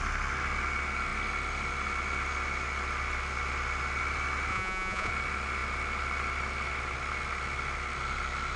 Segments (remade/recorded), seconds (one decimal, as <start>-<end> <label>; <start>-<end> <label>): 0.0-4.5 recorded; 4.5-5.1 remade; 5.1-8.6 recorded